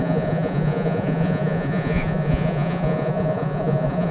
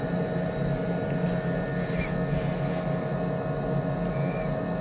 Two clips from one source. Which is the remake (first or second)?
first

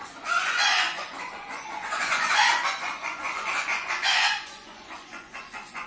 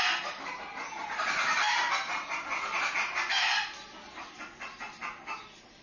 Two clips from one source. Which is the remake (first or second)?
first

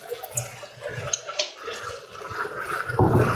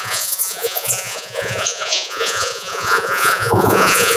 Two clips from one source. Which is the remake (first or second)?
second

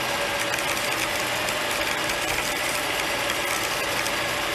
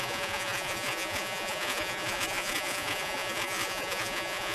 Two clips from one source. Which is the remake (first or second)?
second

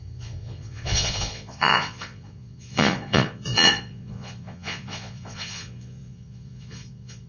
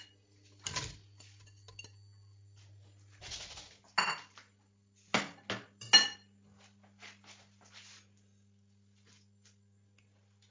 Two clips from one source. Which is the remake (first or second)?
first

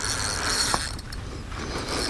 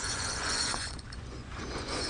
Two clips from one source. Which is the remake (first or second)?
second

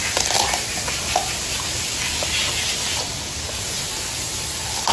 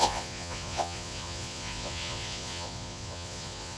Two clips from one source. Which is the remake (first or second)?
second